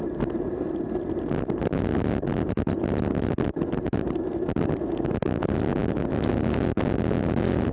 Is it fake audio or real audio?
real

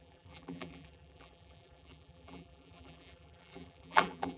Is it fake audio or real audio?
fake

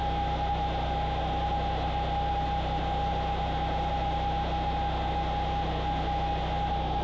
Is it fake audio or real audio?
real